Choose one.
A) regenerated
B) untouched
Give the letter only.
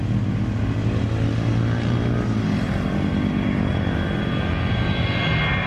B